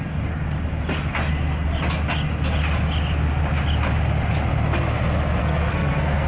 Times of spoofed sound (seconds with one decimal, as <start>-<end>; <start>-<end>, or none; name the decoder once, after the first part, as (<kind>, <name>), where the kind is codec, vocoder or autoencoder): 5.4-6.3 (codec, SNAC)